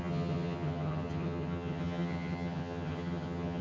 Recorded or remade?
remade